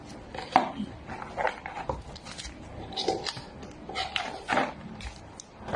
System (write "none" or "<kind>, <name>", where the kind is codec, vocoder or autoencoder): none